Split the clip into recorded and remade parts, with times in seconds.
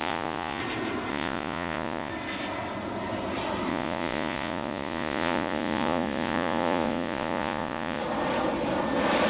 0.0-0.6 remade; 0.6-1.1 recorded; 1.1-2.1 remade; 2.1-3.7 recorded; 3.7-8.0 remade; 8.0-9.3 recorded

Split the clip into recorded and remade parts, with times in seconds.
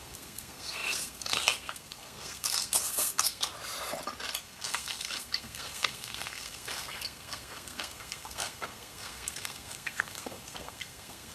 0.0-3.5 remade; 3.5-4.4 recorded; 4.4-11.3 remade